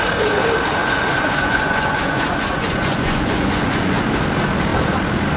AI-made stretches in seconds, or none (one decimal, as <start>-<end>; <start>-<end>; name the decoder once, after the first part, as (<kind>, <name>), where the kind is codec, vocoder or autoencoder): 0.8-4.0 (vocoder, Vocos)